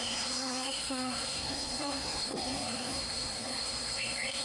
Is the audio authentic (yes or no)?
no